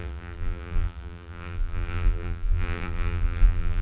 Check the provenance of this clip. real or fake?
fake